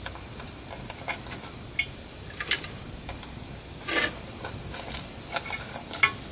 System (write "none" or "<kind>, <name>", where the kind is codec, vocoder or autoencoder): none